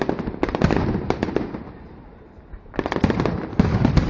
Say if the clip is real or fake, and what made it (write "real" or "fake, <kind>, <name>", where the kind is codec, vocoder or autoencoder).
real